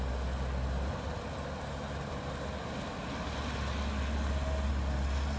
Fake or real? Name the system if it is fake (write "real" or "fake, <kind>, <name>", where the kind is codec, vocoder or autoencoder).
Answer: real